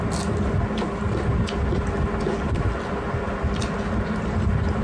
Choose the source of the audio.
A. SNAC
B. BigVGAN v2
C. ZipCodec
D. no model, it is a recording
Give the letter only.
D